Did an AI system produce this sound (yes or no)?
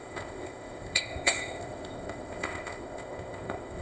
yes